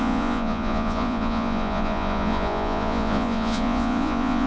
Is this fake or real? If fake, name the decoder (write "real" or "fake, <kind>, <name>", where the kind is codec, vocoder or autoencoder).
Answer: fake, vocoder, Vocos